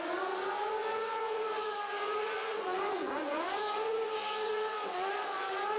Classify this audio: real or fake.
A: fake